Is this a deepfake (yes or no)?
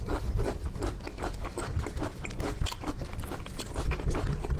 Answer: no